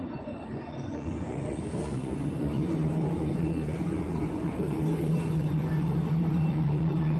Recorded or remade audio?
remade